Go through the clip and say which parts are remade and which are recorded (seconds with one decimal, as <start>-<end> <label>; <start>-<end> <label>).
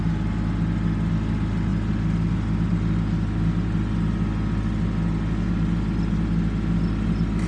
0.0-7.5 recorded